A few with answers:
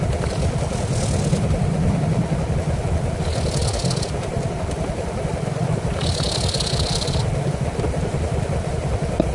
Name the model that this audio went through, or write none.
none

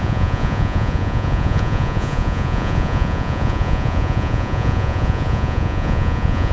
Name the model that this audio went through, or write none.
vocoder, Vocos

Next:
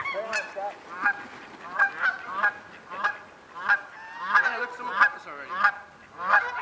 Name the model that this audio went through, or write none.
none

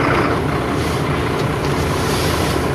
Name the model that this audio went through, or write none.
none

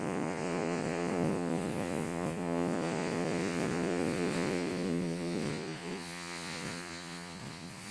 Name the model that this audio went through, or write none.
vocoder, Vocos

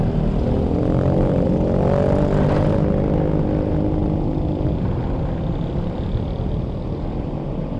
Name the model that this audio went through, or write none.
none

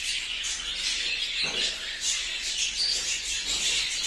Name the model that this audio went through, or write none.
vocoder, Vocos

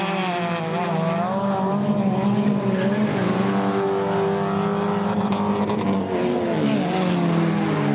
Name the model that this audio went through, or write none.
none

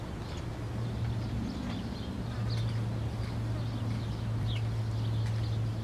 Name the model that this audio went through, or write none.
none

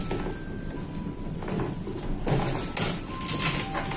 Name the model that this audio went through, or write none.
none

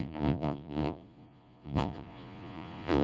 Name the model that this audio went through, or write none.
vocoder, Vocos